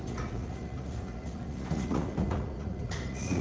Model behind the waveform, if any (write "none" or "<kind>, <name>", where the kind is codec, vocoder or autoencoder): vocoder, Vocos